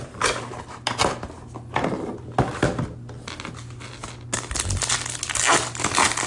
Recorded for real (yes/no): yes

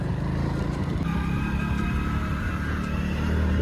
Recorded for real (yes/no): yes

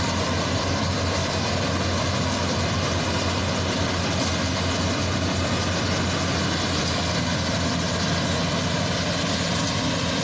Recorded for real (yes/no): yes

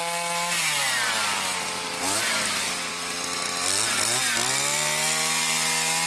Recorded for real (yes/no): yes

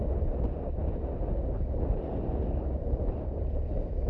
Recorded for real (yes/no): yes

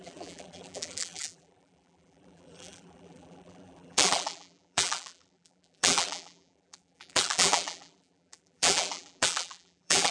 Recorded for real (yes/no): no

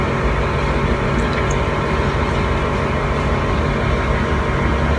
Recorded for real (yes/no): no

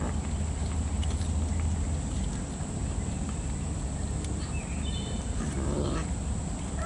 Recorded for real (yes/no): yes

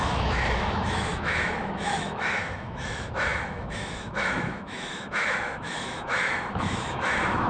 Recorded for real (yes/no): no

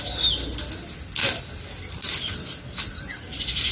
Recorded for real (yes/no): yes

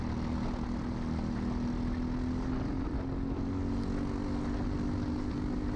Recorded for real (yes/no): yes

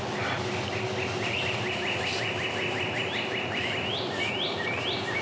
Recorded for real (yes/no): yes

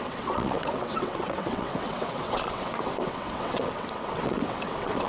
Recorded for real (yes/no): no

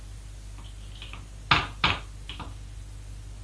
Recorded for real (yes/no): yes